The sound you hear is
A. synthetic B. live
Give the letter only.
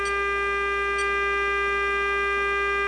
B